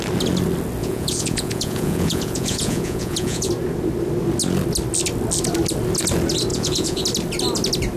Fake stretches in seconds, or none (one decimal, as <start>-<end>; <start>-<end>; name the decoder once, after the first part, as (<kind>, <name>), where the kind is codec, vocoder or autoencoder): 0.8-3.5 (vocoder, Vocos); 6.5-7.0